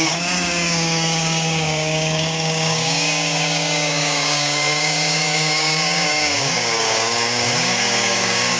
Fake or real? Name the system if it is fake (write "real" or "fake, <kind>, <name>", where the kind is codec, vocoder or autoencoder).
fake, codec, DAC